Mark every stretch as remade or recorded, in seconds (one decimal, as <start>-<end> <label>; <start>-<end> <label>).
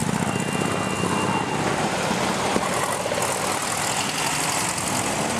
0.0-5.4 recorded